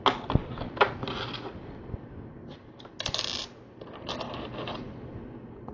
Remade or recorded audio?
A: recorded